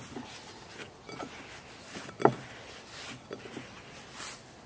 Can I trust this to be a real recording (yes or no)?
yes